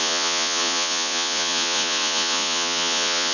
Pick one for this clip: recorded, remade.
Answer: remade